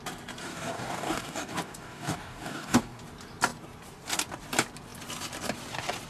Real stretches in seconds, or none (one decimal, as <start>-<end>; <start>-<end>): 0.0-0.4; 3.0-6.1